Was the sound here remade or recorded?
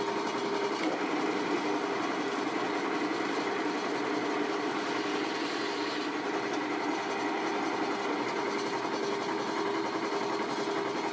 recorded